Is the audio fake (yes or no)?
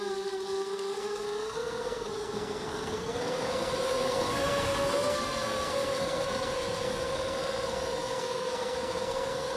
yes